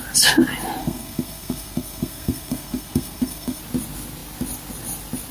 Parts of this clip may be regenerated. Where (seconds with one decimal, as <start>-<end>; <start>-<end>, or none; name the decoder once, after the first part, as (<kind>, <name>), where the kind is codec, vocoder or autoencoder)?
0.8-3.6 (codec, SNAC)